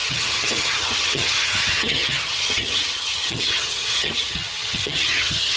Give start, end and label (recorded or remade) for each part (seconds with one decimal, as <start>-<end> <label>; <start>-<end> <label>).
0.0-5.6 remade